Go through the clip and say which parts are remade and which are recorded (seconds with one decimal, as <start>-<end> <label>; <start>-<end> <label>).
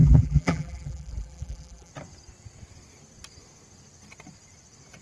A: 0.0-1.9 remade; 1.9-5.0 recorded